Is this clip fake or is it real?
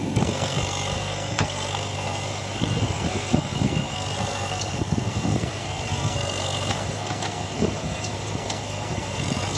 fake